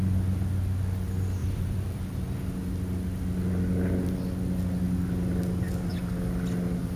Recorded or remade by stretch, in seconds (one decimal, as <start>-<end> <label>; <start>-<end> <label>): 0.0-1.4 recorded; 1.4-2.0 remade; 2.0-7.0 recorded